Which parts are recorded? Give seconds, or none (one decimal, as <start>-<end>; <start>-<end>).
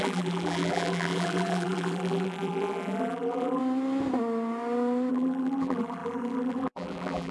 3.6-5.1